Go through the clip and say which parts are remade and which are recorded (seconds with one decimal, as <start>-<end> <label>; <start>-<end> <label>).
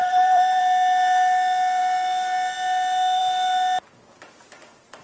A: 0.0-0.6 remade; 0.6-5.0 recorded